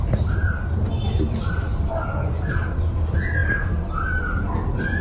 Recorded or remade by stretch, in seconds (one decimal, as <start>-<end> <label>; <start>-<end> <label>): 0.0-5.0 recorded